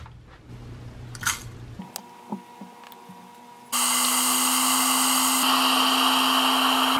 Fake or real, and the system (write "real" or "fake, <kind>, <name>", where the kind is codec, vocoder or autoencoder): real